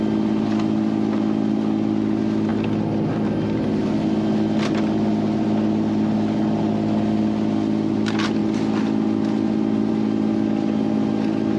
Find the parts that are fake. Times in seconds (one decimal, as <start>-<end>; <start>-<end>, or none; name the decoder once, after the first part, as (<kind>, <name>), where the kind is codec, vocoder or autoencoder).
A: none